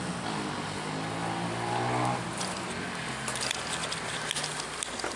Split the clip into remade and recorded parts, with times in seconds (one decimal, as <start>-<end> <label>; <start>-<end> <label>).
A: 0.0-5.2 recorded